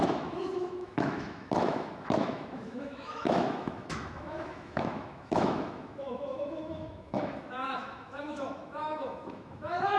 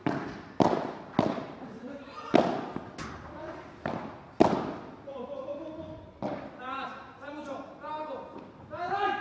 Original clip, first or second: second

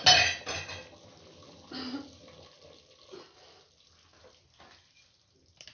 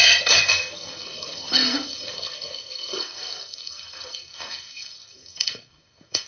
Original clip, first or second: first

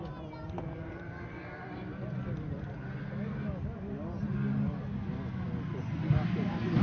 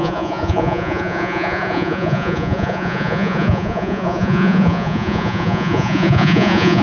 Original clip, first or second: first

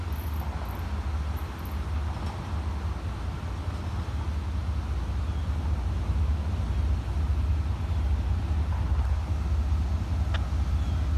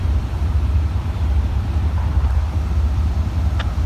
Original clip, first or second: first